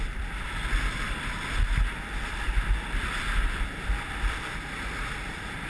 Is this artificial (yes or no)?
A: no